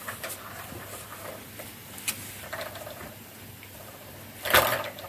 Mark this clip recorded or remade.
recorded